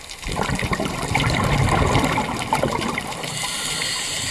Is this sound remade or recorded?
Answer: recorded